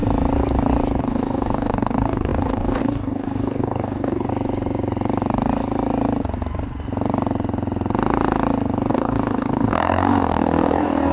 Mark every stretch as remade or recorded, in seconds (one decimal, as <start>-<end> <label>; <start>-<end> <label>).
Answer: 0.0-1.0 recorded; 1.0-4.3 remade; 4.3-8.9 recorded; 8.9-11.1 remade

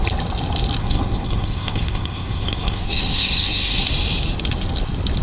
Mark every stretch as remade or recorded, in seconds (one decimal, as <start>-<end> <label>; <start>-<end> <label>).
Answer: 0.0-0.8 recorded; 0.8-3.9 remade; 3.9-5.2 recorded